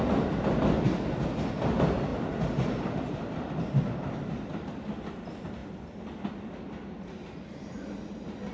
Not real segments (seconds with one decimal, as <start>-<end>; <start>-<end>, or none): none